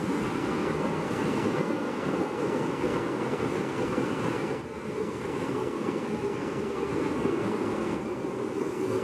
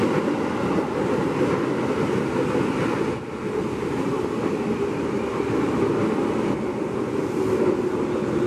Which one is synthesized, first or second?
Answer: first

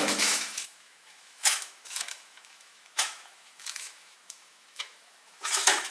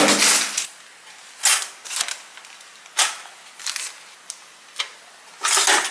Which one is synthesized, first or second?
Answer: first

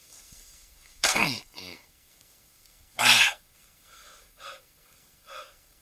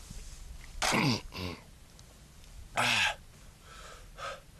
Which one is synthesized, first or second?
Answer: first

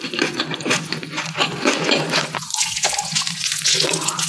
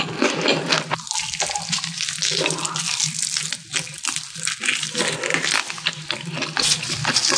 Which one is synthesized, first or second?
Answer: first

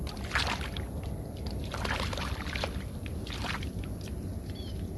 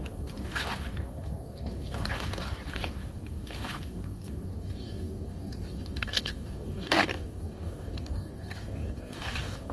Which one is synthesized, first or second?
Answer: second